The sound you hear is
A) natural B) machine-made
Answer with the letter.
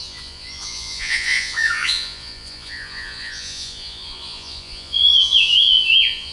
B